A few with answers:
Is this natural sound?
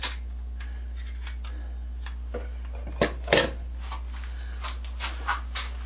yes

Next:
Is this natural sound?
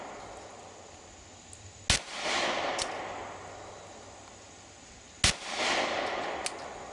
yes